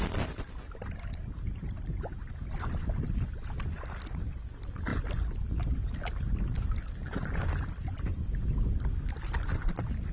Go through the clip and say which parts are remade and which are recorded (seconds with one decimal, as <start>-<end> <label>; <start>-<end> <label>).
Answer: 0.0-10.1 recorded